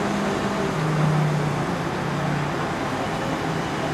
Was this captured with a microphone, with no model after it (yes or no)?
yes